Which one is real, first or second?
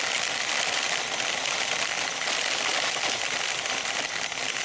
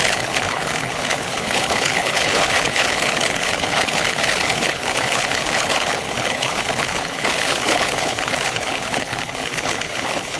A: first